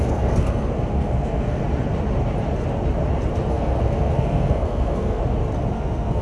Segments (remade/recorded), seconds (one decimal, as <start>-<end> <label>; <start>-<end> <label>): 0.0-1.6 remade; 1.6-3.5 recorded; 3.5-5.2 remade; 5.2-5.7 recorded; 5.7-6.2 remade